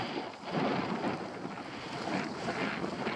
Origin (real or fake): real